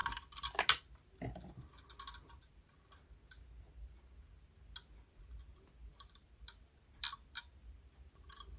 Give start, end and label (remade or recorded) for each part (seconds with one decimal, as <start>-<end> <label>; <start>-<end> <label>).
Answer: 0.0-5.9 recorded; 5.9-7.4 remade; 7.4-8.6 recorded